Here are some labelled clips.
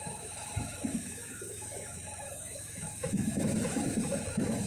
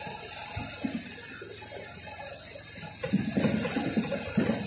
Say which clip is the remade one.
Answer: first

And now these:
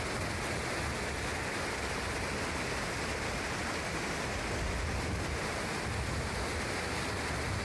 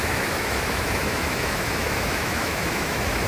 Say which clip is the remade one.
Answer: second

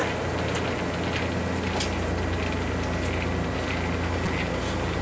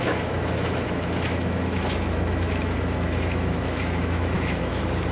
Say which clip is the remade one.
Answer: second